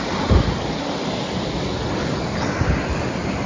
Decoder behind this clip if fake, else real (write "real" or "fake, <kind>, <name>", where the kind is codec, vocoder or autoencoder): real